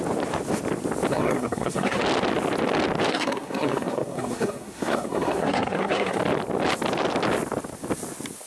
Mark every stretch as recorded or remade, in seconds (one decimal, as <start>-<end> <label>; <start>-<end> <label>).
0.0-1.1 recorded; 1.1-2.0 remade; 2.0-3.1 recorded; 3.1-6.2 remade; 6.2-8.5 recorded